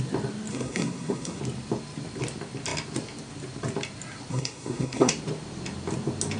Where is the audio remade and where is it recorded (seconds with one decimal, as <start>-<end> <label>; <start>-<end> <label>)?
0.0-0.5 recorded; 0.5-1.4 remade; 1.4-4.3 recorded; 4.3-5.1 remade; 5.1-6.4 recorded